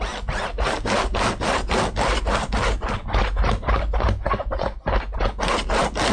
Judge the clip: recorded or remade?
recorded